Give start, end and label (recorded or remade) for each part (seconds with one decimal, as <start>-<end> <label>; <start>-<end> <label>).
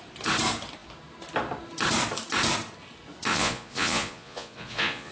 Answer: 0.0-3.3 recorded; 3.3-5.1 remade